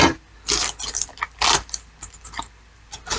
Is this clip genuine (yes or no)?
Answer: yes